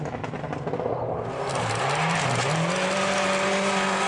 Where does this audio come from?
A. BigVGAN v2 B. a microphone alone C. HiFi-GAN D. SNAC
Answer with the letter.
B